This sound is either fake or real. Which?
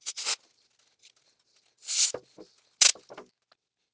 real